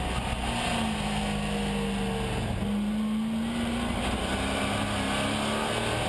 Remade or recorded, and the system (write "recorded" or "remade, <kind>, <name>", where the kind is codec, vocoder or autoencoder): recorded